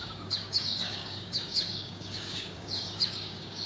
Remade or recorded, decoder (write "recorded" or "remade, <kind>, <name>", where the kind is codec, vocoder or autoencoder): remade, codec, DAC